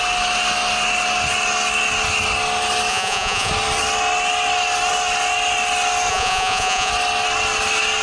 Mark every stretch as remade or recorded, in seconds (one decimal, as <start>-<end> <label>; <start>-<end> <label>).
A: 0.0-2.9 recorded; 2.9-3.5 remade; 3.5-6.1 recorded; 6.1-6.9 remade; 6.9-8.0 recorded